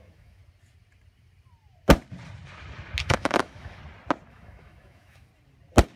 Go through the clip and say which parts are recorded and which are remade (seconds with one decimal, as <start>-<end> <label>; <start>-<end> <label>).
0.0-0.4 remade; 0.4-3.0 recorded; 3.0-3.8 remade; 3.8-4.3 recorded; 4.3-5.3 remade; 5.3-6.0 recorded